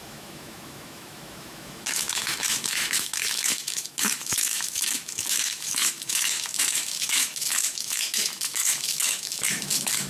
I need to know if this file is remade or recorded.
remade